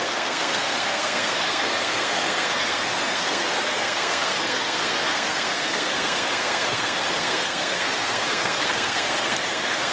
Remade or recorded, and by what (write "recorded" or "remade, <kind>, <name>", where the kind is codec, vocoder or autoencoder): remade, codec, SNAC